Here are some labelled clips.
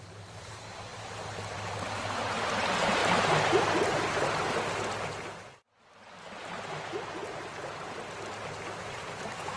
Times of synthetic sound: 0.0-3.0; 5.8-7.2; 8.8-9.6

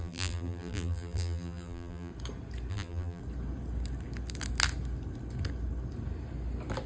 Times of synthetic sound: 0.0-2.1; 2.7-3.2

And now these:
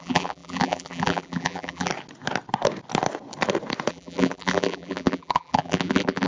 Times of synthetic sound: 0.0-1.9; 3.9-6.3

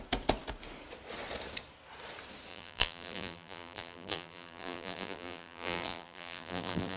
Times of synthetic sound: 2.5-7.0